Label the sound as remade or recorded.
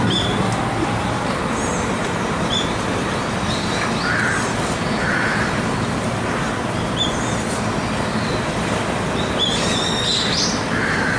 remade